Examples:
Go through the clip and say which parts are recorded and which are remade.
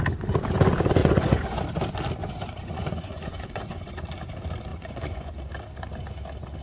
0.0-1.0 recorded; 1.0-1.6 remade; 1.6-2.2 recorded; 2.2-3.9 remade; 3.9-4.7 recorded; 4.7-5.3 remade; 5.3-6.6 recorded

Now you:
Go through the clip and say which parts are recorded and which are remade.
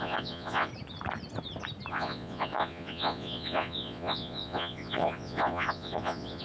0.0-0.7 remade; 0.7-1.9 recorded; 1.9-6.4 remade